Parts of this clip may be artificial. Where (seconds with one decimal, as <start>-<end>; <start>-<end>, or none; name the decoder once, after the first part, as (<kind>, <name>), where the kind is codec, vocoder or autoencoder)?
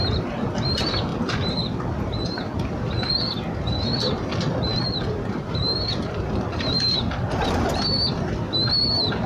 none